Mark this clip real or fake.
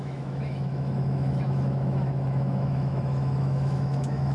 fake